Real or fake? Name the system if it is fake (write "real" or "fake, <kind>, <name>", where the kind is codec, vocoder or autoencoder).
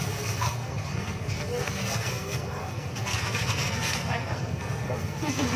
fake, codec, SNAC